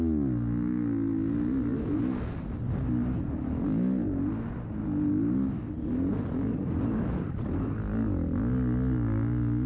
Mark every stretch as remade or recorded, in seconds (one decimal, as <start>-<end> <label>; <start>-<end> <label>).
0.0-9.7 recorded